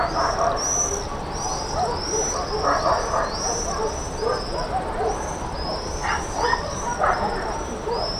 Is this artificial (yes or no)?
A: no